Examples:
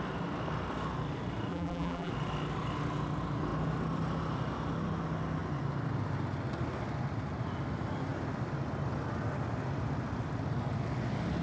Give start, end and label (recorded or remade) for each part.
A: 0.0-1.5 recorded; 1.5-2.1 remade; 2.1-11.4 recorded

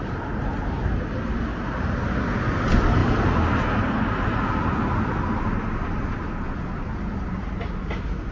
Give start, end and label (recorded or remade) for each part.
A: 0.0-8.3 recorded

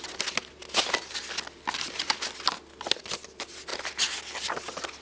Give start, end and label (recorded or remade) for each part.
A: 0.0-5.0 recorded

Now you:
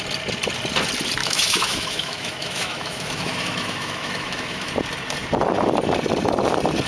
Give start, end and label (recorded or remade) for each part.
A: 0.0-1.2 recorded; 1.2-4.7 remade; 4.7-6.9 recorded